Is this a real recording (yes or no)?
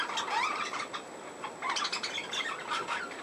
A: yes